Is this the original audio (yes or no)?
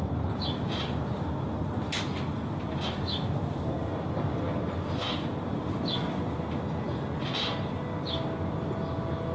yes